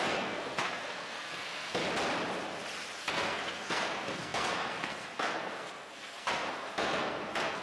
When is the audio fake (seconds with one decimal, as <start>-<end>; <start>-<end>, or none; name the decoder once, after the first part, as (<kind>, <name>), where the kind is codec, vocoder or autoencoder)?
0.0-1.8 (codec, SNAC); 3.0-7.6

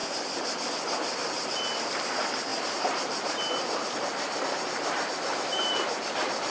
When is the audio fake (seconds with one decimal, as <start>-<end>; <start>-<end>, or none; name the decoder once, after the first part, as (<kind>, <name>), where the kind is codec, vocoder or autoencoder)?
2.5-6.5 (vocoder, BigVGAN v2)